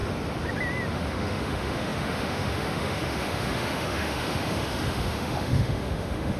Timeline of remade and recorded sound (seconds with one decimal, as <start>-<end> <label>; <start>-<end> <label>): 0.0-0.9 recorded; 0.9-6.4 remade

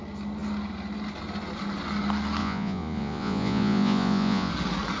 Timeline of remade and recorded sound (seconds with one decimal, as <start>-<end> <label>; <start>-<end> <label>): 0.0-2.4 recorded; 2.4-4.5 remade; 4.5-5.0 recorded

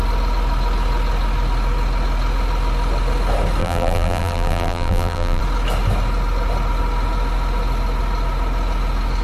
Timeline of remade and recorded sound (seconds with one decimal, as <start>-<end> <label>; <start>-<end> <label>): 0.0-3.6 recorded; 3.6-5.4 remade; 5.4-9.2 recorded

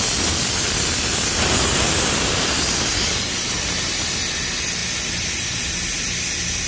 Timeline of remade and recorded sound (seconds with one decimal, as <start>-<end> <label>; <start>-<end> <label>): 0.0-6.7 recorded

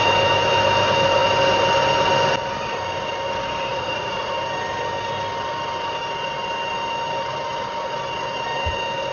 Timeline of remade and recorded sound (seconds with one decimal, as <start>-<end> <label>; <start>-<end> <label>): 0.0-3.7 recorded; 3.7-4.3 remade; 4.3-9.1 recorded

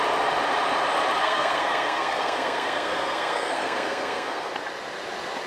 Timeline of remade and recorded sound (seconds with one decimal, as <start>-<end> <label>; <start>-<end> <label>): 0.0-1.2 recorded; 1.2-4.5 remade; 4.5-5.5 recorded

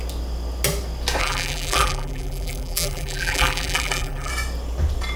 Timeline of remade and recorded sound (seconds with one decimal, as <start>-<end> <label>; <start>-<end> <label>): 0.0-1.2 recorded; 1.2-4.3 remade; 4.3-5.2 recorded